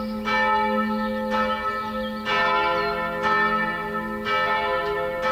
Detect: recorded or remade recorded